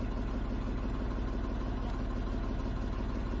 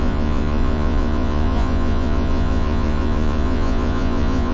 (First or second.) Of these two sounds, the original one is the first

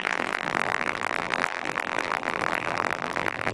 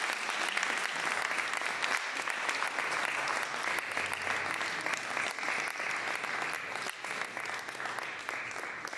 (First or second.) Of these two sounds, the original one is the second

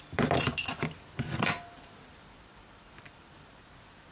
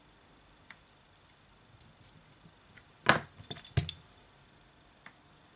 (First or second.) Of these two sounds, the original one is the second